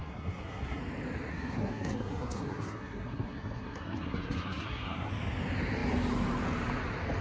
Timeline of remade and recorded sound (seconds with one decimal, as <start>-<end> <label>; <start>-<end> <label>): 0.0-0.8 remade; 0.8-1.3 recorded; 1.3-5.1 remade; 5.1-7.2 recorded